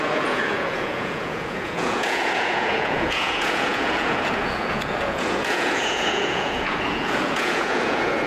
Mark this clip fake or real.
fake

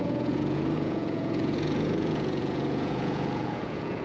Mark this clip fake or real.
fake